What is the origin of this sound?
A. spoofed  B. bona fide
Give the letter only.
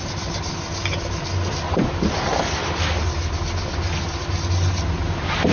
B